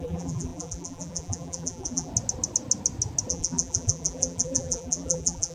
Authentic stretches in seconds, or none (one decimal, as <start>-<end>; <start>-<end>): 2.1-3.3